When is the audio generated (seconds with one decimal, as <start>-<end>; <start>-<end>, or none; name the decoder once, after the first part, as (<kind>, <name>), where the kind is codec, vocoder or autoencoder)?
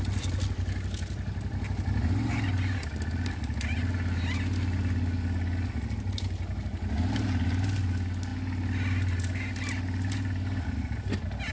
none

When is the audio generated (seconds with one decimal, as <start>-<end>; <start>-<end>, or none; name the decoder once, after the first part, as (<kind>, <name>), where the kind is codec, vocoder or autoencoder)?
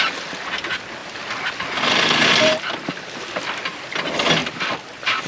none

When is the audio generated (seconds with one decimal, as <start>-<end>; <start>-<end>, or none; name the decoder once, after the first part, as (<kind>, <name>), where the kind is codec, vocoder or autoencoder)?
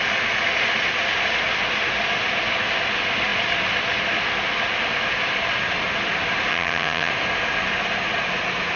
6.5-7.1 (vocoder, HiFi-GAN)